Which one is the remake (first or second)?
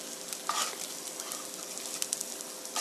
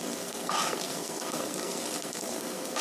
second